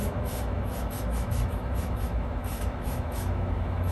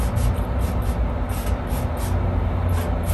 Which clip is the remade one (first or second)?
first